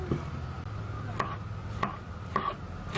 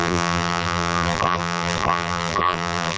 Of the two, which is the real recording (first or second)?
first